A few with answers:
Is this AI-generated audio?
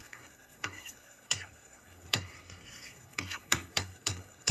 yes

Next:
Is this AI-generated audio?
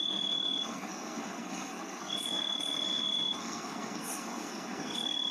yes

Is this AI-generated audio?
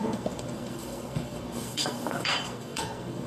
yes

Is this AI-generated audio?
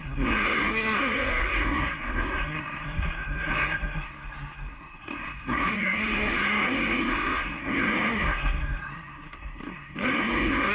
yes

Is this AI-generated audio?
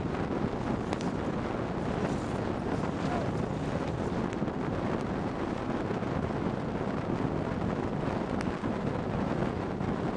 no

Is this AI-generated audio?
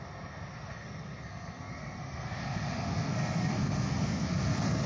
yes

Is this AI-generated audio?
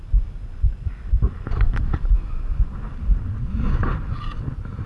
no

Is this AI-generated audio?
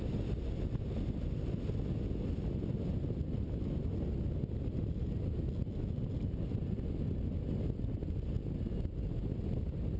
no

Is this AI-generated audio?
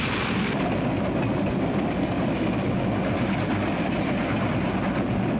no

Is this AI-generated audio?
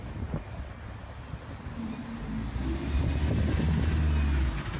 no